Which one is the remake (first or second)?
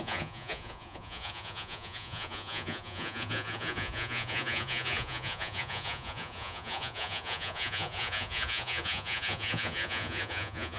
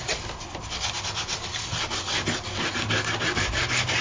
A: first